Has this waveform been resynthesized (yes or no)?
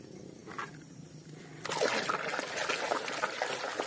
no